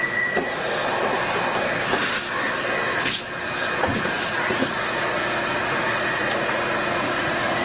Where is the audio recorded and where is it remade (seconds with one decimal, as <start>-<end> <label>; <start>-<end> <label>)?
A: 0.0-0.8 remade; 0.8-3.8 recorded; 3.8-7.6 remade